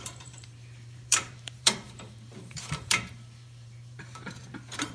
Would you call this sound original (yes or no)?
no